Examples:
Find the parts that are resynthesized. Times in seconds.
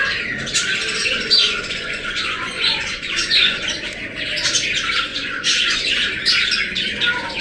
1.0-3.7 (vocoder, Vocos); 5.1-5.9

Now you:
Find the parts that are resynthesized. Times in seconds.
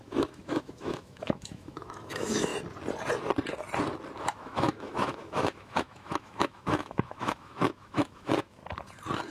0.0-2.5 (autoencoder, DAC-VAE); 4.2-8.6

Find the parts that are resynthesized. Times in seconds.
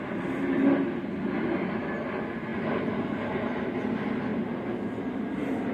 none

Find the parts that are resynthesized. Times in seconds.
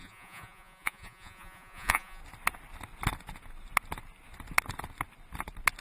0.0-2.2 (vocoder, Vocos)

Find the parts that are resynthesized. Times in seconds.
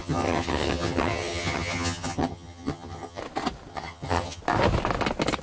0.0-3.2 (vocoder, HiFi-GAN); 3.7-4.4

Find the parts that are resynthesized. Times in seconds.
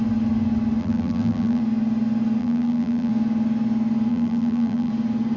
0.8-1.6 (vocoder, BigVGAN v2); 2.4-3.1; 4.1-4.9